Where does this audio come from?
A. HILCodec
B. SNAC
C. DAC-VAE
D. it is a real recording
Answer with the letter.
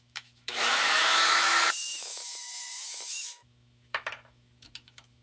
C